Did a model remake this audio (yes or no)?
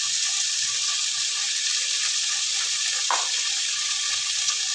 no